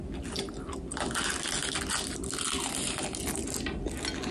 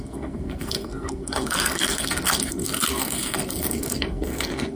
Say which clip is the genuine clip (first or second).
first